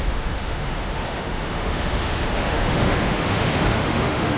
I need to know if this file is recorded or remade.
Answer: remade